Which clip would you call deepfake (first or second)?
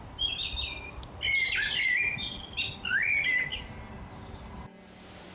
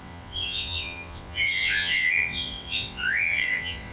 second